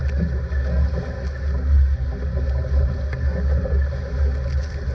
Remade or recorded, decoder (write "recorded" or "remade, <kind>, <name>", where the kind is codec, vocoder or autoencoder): recorded